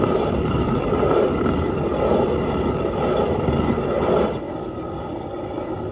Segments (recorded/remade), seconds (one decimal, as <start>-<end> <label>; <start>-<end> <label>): 0.0-5.9 recorded